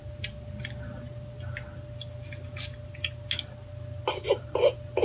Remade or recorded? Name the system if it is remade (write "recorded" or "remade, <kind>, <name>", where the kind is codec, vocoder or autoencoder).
recorded